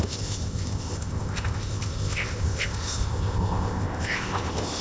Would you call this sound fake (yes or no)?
yes